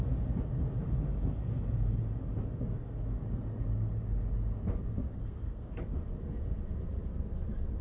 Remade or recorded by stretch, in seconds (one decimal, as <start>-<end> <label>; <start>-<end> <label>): 0.0-5.1 recorded; 5.1-5.7 remade; 5.7-7.8 recorded